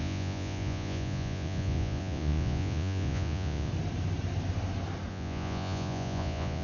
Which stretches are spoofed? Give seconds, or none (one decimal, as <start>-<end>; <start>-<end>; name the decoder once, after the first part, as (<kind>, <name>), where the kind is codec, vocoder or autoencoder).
0.0-3.7 (vocoder, Vocos); 5.1-6.6